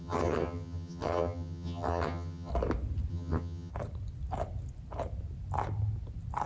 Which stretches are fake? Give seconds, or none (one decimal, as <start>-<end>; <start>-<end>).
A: 0.0-2.5; 3.1-3.7